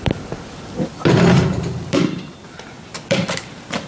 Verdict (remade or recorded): remade